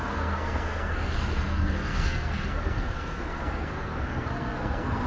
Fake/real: fake